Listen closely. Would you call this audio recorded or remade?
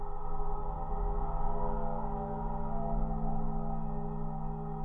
recorded